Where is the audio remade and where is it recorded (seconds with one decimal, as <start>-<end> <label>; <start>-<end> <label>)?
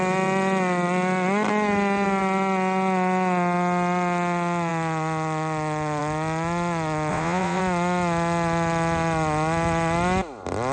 0.0-7.1 recorded; 7.1-7.6 remade; 7.6-10.7 recorded